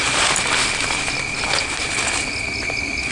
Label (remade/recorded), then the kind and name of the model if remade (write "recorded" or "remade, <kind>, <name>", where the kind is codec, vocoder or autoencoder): recorded